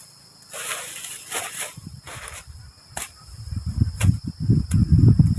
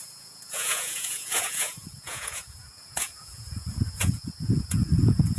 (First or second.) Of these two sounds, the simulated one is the second